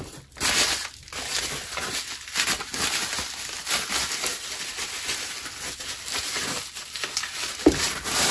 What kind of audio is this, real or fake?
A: real